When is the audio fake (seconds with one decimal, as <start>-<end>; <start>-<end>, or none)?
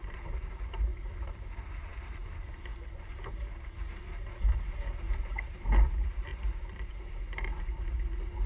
0.0-8.5